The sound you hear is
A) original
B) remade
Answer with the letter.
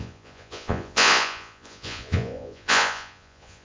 B